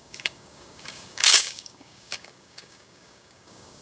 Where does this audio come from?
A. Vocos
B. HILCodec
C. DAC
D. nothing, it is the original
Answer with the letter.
C